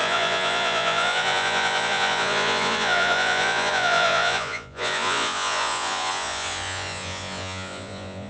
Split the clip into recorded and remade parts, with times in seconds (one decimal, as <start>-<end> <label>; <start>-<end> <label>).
0.0-8.3 remade